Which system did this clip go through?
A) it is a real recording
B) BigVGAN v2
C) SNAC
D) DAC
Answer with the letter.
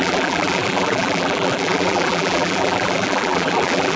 B